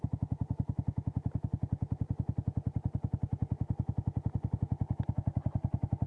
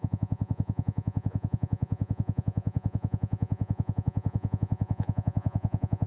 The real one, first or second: first